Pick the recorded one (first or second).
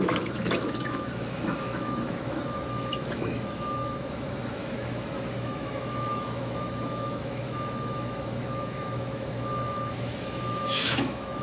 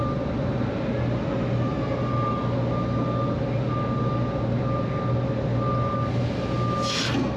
second